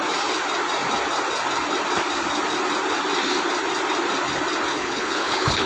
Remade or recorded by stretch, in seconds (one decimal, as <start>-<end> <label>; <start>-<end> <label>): 0.0-4.7 recorded; 4.7-5.7 remade